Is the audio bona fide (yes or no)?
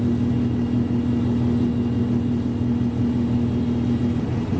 yes